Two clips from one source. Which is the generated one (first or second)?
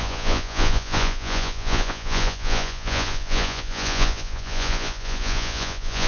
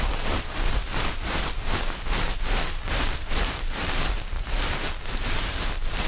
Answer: first